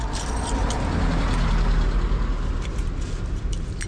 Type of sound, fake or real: real